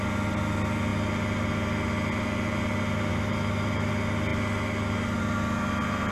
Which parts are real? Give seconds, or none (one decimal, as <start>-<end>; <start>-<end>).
0.0-3.1; 3.9-6.1